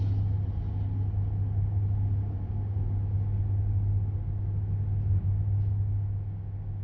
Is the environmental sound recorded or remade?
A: recorded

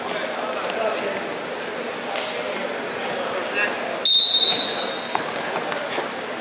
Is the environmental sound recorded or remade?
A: recorded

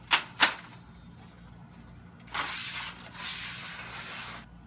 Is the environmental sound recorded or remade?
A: recorded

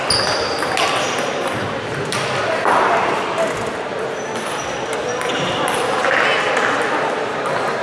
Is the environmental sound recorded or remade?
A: recorded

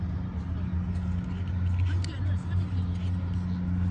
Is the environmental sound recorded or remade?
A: recorded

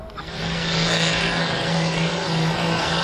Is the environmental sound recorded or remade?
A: remade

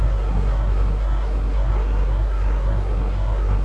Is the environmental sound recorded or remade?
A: remade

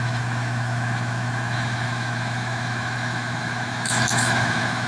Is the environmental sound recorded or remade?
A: remade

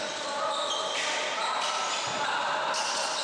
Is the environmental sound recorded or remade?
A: recorded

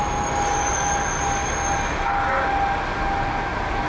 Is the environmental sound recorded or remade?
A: recorded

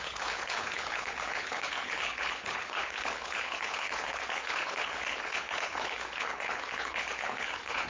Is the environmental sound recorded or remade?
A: remade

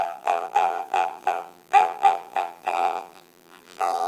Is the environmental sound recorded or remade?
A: remade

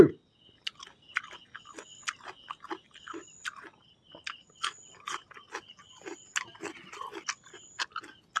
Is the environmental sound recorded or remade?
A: recorded